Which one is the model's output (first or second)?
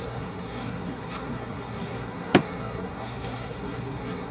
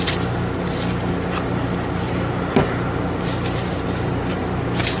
first